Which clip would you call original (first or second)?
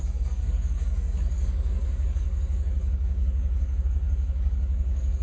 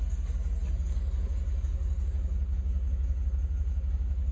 second